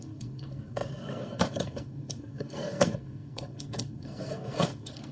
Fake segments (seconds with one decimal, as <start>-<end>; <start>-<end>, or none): 0.0-5.1